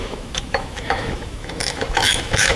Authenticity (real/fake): fake